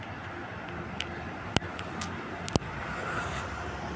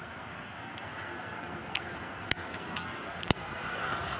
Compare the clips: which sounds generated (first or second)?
second